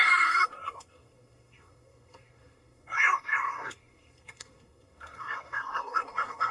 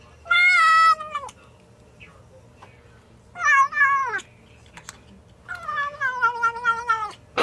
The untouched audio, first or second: second